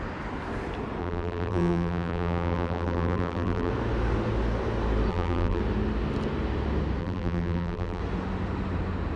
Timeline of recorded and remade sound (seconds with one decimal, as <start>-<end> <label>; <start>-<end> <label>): 0.0-1.0 recorded; 1.0-3.7 remade; 3.7-5.1 recorded; 5.1-5.6 remade; 5.6-7.0 recorded; 7.0-8.0 remade; 8.0-9.2 recorded